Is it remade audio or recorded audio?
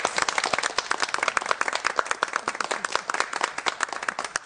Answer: recorded